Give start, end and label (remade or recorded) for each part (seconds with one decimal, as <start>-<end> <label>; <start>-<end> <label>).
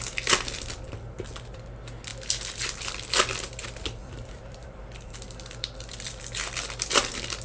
0.0-4.0 recorded; 4.0-6.2 remade; 6.2-7.4 recorded